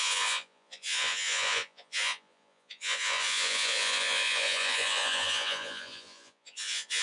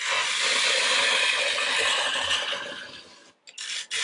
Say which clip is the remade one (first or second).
first